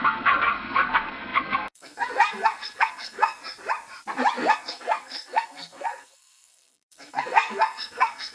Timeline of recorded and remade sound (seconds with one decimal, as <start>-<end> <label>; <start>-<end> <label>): 0.0-3.4 remade; 3.4-4.5 recorded; 4.5-8.3 remade